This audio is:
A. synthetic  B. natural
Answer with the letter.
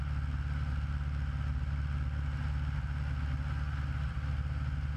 A